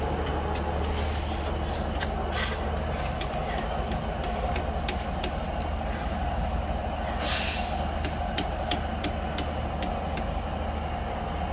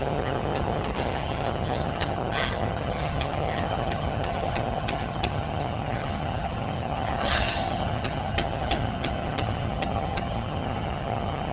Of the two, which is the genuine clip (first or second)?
first